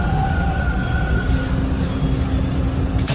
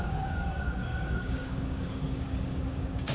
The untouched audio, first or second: first